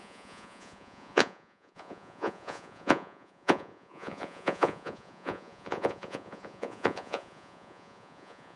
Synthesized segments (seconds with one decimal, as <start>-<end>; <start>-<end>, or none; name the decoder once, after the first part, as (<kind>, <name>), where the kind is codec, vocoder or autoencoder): 0.0-8.6 (vocoder, Vocos)